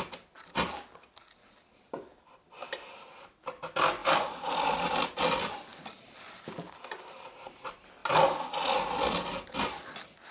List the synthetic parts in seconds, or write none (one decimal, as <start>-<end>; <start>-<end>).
none